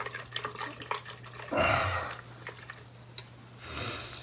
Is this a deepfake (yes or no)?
no